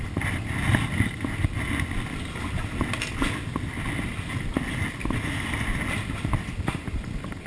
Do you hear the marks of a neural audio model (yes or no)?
no